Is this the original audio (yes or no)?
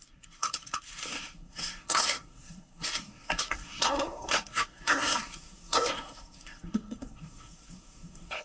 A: no